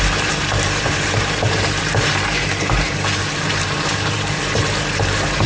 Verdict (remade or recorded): remade